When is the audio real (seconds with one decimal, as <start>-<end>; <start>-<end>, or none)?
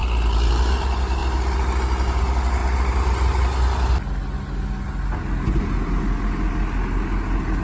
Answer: 0.0-7.6